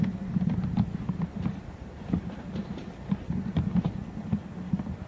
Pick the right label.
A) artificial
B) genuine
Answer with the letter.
B